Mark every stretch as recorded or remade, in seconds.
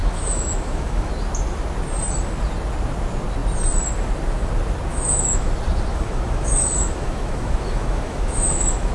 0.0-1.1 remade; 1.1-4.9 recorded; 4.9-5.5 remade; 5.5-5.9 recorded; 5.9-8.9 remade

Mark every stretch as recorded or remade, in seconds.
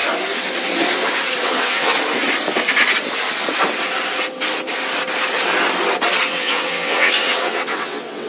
0.0-1.4 recorded; 1.4-1.9 remade; 1.9-6.3 recorded; 6.3-8.3 remade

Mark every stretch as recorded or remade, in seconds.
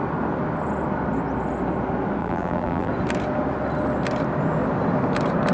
0.0-2.2 recorded; 2.2-2.9 remade; 2.9-5.5 recorded